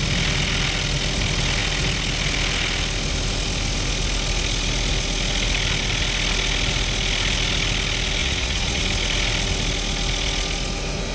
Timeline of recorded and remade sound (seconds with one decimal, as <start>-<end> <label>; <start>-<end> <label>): 0.0-8.2 recorded; 8.2-8.8 remade; 8.8-11.1 recorded